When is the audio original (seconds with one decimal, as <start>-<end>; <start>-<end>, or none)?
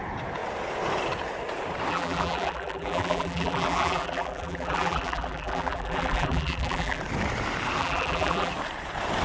0.0-1.9; 7.0-7.8; 8.5-9.2